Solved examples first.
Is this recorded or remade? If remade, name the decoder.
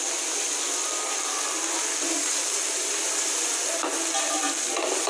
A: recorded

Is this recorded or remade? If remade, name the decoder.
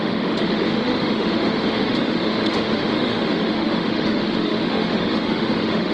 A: remade, autoencoder, DAC-VAE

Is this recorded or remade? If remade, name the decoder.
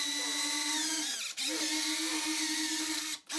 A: recorded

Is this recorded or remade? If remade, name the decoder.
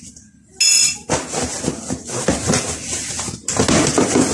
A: recorded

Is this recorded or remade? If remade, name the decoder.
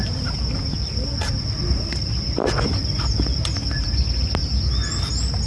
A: recorded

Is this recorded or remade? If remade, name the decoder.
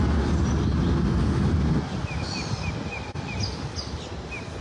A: recorded